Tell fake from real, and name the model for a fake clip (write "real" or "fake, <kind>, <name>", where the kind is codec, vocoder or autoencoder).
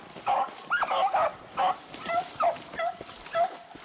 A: real